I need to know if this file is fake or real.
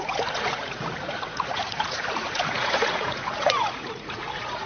fake